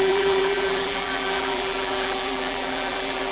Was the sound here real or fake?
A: fake